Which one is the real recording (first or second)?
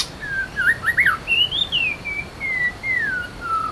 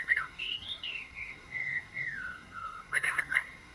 first